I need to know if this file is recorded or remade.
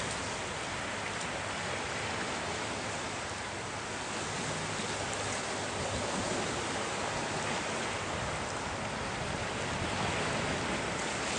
recorded